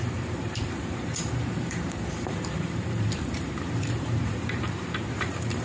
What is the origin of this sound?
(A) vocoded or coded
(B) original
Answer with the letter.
A